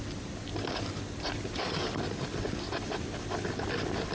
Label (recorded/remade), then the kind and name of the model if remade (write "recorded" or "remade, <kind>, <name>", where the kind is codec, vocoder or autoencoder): recorded